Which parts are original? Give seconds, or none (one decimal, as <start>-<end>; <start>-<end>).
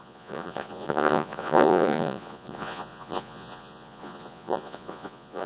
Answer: none